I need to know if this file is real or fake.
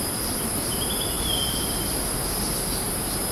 real